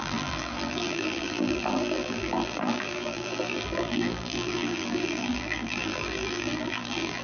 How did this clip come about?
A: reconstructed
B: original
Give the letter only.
A